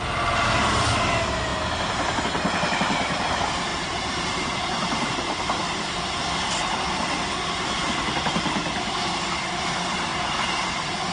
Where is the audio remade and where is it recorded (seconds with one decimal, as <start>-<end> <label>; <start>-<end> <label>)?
0.0-3.7 recorded; 3.7-5.1 remade; 5.1-11.1 recorded